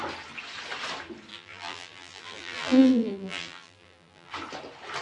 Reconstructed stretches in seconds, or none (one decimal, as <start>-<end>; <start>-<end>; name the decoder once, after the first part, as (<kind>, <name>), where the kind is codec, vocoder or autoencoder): 1.3-4.3 (vocoder, BigVGAN v2)